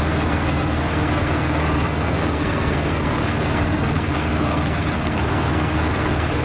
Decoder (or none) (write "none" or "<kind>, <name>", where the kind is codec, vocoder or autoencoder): codec, SNAC